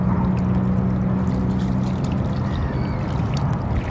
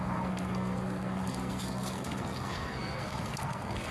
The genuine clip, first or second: first